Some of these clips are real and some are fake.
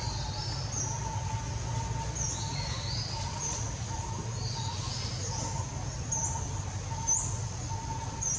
real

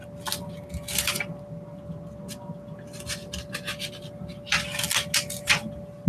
real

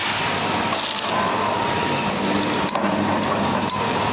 fake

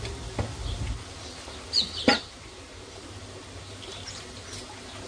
real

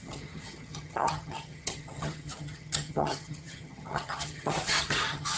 fake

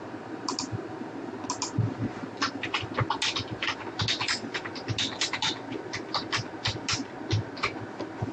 real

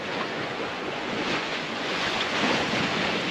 fake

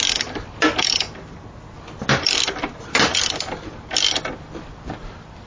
real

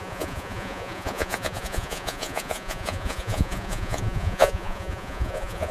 fake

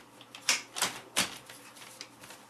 real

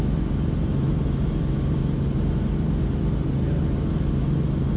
real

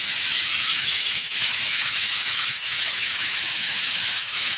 fake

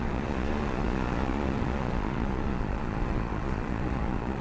fake